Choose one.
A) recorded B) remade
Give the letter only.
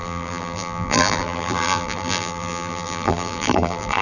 B